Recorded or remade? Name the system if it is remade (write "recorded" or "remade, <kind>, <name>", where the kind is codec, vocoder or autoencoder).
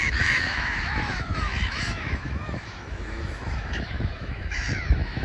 remade, autoencoder, DAC-VAE